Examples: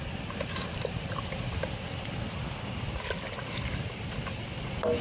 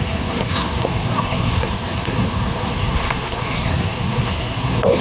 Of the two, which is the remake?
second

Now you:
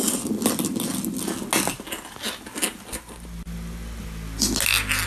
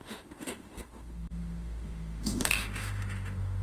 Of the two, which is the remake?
second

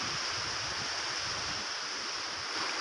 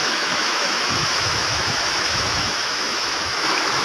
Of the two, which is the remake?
second